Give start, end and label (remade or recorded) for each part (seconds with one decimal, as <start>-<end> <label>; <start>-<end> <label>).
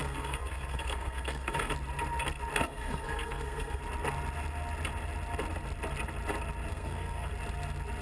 0.0-1.7 remade; 1.7-2.6 recorded; 2.6-3.8 remade; 3.8-6.7 recorded; 6.7-7.3 remade; 7.3-8.0 recorded